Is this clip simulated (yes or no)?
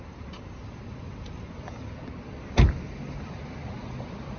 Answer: no